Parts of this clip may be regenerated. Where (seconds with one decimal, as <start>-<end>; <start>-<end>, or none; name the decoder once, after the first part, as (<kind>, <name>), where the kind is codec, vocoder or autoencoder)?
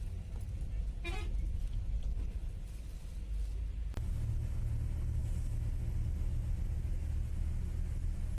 none